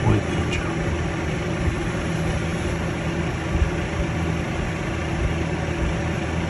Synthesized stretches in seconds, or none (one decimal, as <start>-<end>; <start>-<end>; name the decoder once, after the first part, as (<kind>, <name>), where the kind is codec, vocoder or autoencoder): none